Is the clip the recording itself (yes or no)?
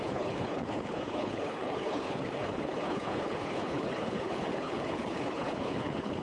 no